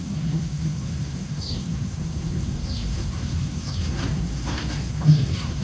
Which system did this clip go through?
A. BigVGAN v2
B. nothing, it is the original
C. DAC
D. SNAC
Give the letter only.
D